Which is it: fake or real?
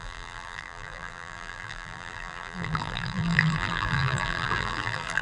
fake